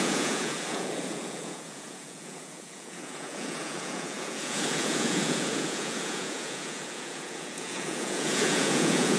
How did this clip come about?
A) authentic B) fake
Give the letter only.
B